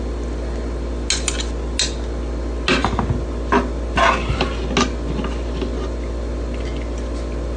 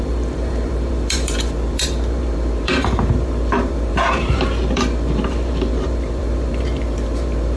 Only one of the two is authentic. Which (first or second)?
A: first